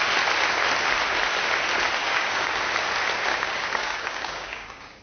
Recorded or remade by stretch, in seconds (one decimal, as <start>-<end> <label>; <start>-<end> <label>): 0.0-2.0 recorded; 2.0-2.5 remade; 2.5-3.3 recorded; 3.3-5.0 remade